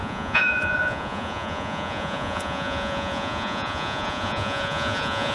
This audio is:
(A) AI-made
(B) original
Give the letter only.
A